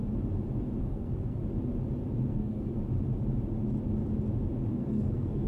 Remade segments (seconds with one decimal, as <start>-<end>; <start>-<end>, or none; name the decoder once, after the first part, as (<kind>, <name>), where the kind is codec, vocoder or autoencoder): 0.8-1.4 (codec, SNAC); 2.3-2.8; 4.7-5.5

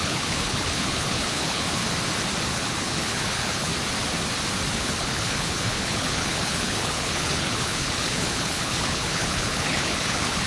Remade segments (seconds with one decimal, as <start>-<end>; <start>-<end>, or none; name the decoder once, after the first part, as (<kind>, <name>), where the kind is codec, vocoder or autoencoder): 0.0-1.8 (codec, HILCodec); 2.5-3.7; 4.7-10.5

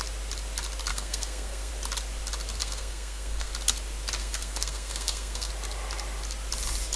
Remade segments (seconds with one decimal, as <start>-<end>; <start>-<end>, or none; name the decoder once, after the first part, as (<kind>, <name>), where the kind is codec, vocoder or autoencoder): 0.9-1.7 (codec, SNAC); 2.6-3.5; 4.2-5.5

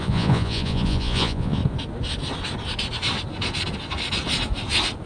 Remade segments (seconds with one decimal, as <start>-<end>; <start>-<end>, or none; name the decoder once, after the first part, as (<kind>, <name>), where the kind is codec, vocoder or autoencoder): 0.0-1.6 (vocoder, Vocos)

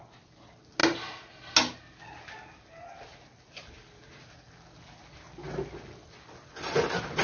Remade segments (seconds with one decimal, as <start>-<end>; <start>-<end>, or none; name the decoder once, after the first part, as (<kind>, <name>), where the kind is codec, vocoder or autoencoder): none